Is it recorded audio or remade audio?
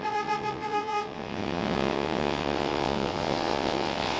remade